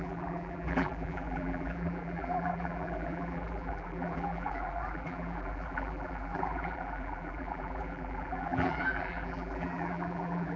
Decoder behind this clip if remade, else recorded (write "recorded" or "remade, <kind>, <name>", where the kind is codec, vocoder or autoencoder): remade, vocoder, BigVGAN v2